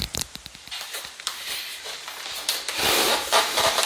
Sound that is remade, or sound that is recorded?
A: remade